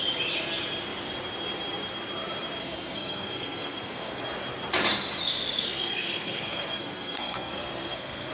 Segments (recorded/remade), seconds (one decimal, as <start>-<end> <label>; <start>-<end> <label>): 0.0-2.6 recorded; 2.6-4.2 remade; 4.2-5.2 recorded; 5.2-8.3 remade